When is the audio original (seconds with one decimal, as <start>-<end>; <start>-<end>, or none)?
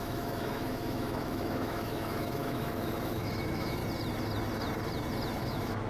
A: 3.8-5.4